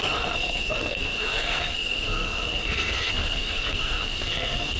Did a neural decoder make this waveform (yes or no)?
yes